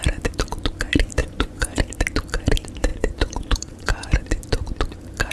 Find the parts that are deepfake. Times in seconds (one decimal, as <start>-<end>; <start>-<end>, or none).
1.2-1.8; 2.9-4.2